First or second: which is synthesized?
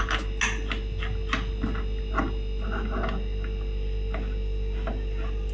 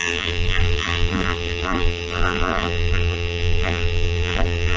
second